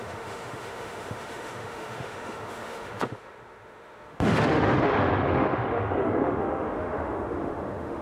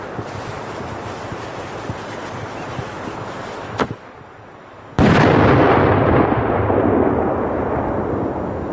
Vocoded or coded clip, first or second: first